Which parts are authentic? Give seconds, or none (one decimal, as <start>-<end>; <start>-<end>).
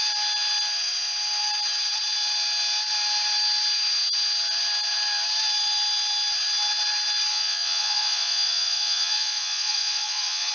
0.0-7.3